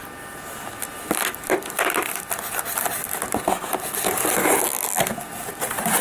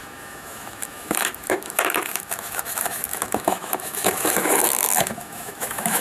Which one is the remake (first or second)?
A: second